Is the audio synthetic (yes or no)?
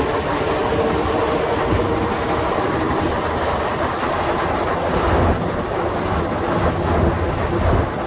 no